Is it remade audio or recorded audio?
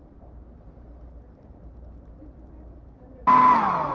recorded